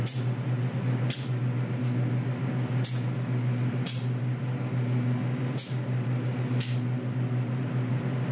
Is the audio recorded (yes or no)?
yes